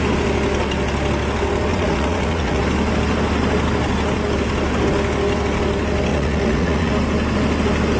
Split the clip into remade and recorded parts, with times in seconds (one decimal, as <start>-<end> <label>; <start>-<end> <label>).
0.0-1.7 recorded; 1.7-2.6 remade; 2.6-6.1 recorded; 6.1-6.9 remade; 6.9-8.0 recorded